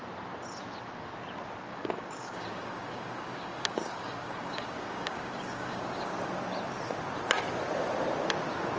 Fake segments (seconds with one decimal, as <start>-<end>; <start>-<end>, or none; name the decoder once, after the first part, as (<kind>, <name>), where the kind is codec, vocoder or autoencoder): 1.7-6.1 (codec, DAC)